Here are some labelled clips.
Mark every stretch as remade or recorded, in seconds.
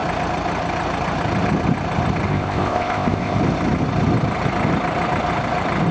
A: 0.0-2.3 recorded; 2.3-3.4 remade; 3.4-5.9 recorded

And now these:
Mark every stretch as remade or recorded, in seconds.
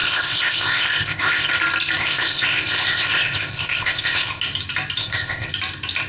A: 0.0-1.5 remade; 1.5-2.0 recorded; 2.0-4.4 remade; 4.4-5.0 recorded; 5.0-5.5 remade; 5.5-6.1 recorded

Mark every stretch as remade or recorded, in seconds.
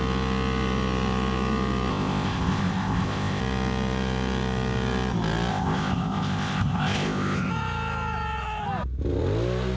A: 0.0-1.9 recorded; 1.9-3.4 remade; 3.4-5.5 recorded; 5.5-7.5 remade; 7.5-9.8 recorded